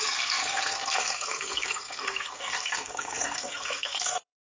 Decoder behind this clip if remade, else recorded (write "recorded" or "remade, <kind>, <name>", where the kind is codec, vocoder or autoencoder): remade, codec, SNAC